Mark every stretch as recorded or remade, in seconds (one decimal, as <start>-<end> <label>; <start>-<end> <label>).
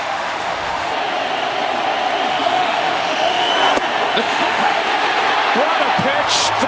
0.0-0.9 remade; 0.9-2.3 recorded; 2.3-3.5 remade; 3.5-4.2 recorded; 4.2-4.8 remade; 4.8-6.7 recorded